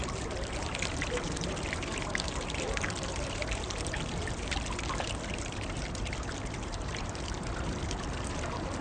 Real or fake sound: fake